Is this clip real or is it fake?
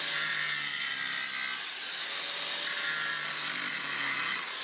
real